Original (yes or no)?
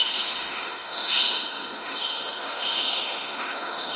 no